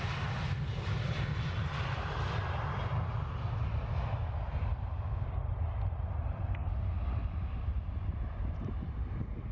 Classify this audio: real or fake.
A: real